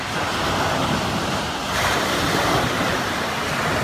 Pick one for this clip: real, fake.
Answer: real